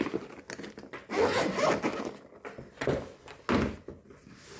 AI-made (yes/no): no